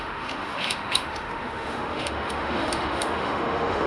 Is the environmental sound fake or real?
fake